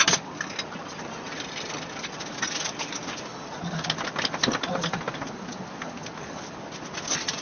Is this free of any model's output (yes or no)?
yes